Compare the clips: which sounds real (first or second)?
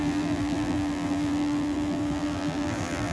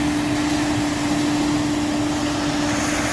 second